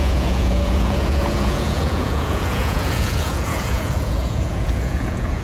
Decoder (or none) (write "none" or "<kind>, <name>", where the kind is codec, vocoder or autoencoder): vocoder, Vocos